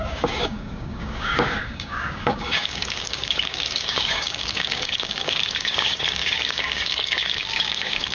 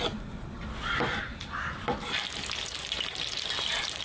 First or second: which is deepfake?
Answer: first